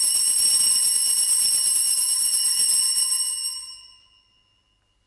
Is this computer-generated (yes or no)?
no